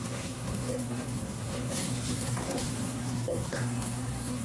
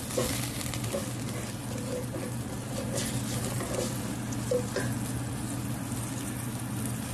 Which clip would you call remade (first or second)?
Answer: first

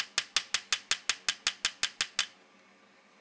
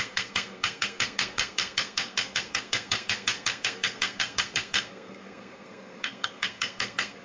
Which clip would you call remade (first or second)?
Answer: second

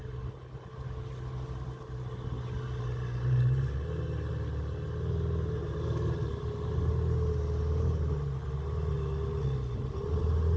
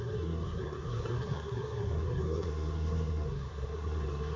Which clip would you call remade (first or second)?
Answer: second